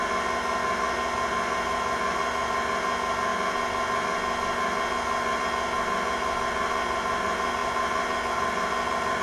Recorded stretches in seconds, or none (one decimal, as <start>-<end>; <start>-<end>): 0.0-9.2